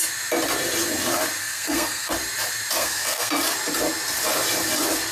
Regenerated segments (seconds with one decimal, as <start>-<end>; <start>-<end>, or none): 1.4-2.1; 2.8-3.3